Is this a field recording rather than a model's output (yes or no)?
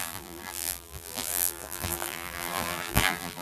no